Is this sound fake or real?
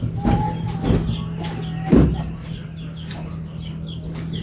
real